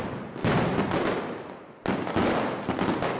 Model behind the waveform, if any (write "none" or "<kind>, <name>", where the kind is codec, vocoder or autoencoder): none